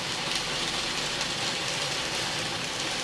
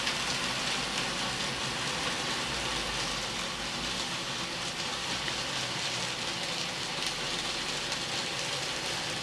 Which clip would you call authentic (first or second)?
second